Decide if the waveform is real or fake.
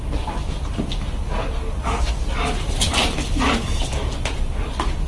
real